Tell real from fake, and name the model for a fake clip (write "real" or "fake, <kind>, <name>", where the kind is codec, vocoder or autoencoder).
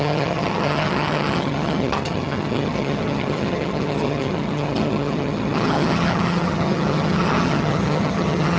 fake, vocoder, HiFi-GAN